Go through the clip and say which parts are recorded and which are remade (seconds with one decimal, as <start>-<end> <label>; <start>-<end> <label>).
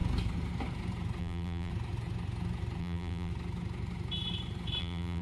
0.0-1.2 recorded; 1.2-1.7 remade; 1.7-2.8 recorded; 2.8-3.3 remade; 3.3-4.8 recorded; 4.8-5.2 remade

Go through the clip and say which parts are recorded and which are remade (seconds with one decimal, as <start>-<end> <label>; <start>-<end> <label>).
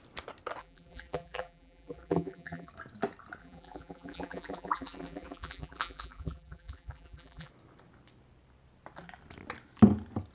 0.0-0.6 recorded; 0.6-2.7 remade; 2.7-3.4 recorded; 3.4-7.5 remade; 7.5-10.3 recorded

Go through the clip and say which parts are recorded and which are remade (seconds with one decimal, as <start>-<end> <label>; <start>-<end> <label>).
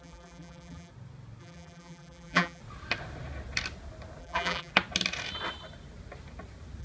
0.0-0.9 remade; 0.9-1.4 recorded; 1.4-2.6 remade; 2.6-4.2 recorded; 4.2-4.7 remade; 4.7-6.8 recorded